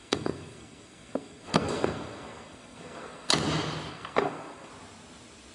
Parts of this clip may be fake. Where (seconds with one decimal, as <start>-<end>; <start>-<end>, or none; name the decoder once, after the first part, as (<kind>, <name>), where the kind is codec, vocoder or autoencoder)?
0.0-3.3 (codec, SNAC); 3.9-4.7